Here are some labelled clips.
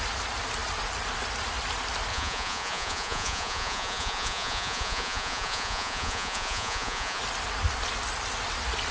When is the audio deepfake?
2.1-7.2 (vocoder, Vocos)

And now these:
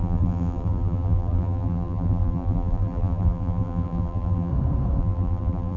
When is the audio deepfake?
0.0-4.5 (vocoder, BigVGAN v2); 5.0-5.8